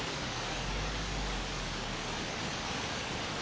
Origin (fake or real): fake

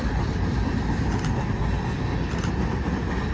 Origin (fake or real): real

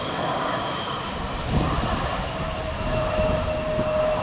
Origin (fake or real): real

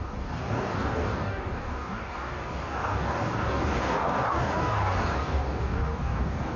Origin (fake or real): fake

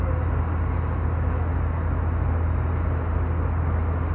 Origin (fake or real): real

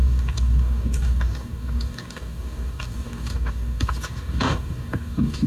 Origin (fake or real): fake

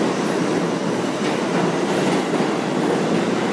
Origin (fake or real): real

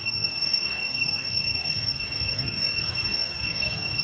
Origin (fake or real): fake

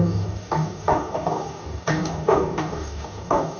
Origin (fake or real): fake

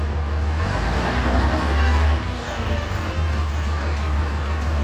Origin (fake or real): fake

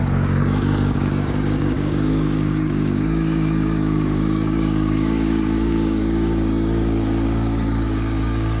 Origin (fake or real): fake